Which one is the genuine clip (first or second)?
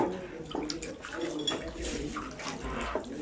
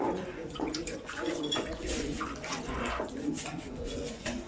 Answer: first